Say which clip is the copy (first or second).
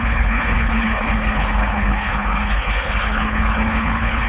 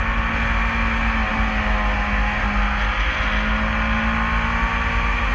first